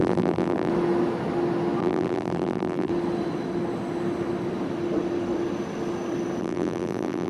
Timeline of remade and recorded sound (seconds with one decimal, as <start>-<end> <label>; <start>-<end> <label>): 0.0-0.7 remade; 0.7-1.8 recorded; 1.8-2.9 remade; 2.9-6.4 recorded; 6.4-7.3 remade